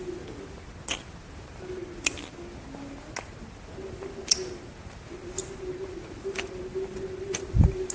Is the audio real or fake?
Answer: real